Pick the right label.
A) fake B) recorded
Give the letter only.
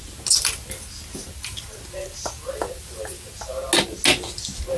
B